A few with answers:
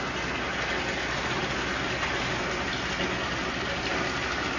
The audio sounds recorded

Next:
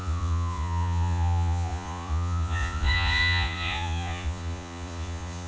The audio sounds remade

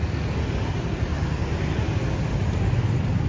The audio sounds recorded